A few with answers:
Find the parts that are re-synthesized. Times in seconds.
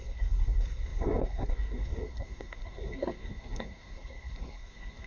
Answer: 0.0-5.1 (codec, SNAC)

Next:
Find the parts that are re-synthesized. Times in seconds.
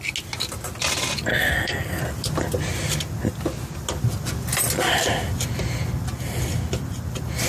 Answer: 1.3-2.0 (codec, SNAC)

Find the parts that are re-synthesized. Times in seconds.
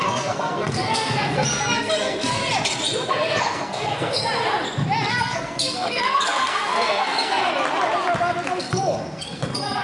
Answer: 0.0-2.4 (codec, SNAC); 3.1-4.2; 5.1-7.5; 8.6-9.8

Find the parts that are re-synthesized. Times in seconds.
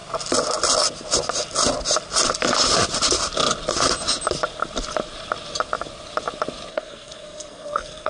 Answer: 6.7-8.1 (codec, SNAC)